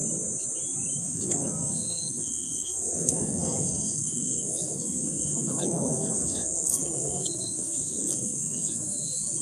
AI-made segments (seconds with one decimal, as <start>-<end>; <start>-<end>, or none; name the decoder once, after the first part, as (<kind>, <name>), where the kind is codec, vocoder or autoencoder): 1.0-9.4 (codec, SNAC)